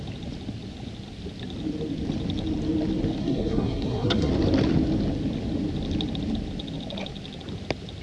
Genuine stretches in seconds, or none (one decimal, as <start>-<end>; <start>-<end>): 0.0-3.2; 4.3-8.0